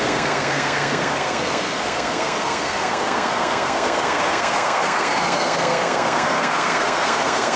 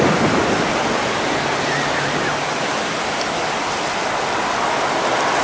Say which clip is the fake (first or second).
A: first